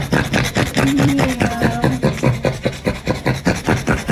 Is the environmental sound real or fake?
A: fake